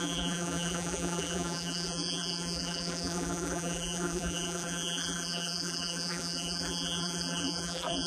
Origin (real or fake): fake